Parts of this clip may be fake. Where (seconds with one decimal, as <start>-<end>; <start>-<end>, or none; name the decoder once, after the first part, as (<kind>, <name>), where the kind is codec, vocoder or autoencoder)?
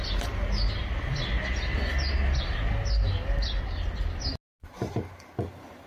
none